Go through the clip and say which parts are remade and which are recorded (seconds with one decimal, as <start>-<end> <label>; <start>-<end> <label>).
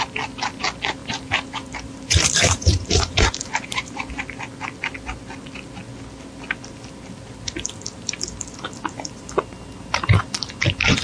0.0-1.0 recorded; 1.0-4.1 remade; 4.1-11.0 recorded